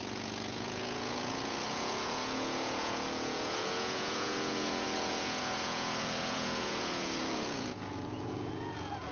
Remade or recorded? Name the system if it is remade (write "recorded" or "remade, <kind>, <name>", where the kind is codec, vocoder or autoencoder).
remade, vocoder, Vocos